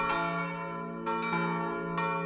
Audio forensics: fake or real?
real